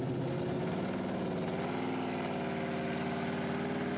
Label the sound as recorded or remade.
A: recorded